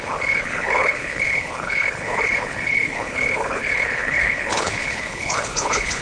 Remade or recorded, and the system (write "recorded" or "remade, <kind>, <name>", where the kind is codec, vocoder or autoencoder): remade, codec, HILCodec